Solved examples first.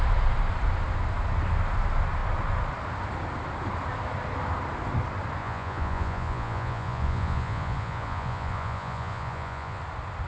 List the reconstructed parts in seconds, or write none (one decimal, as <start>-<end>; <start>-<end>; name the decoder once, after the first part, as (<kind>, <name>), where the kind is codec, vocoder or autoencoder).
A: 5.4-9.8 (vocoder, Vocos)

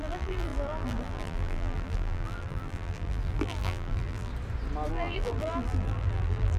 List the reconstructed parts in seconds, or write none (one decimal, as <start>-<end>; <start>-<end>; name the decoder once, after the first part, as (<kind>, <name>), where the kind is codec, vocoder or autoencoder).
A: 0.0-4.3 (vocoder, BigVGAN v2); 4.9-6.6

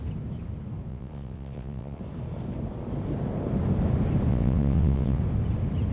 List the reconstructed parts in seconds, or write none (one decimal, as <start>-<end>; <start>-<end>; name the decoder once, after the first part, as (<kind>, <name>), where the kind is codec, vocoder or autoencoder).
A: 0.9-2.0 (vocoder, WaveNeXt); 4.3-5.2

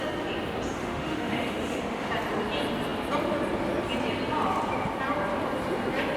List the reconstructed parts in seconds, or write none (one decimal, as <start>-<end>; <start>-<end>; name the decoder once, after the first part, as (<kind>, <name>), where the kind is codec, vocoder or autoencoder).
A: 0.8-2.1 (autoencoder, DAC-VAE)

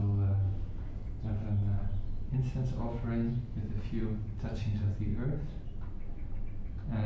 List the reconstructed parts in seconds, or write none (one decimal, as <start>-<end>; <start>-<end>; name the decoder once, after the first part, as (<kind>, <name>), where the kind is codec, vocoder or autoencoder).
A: none

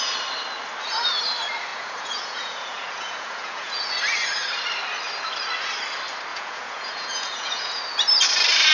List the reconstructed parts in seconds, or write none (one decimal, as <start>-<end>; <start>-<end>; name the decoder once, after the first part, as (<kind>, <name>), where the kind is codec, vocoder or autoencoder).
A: 1.7-3.8 (vocoder, Vocos); 6.3-7.8